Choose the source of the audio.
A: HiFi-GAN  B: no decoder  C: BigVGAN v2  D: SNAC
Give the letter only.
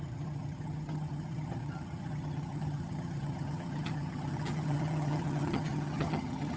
A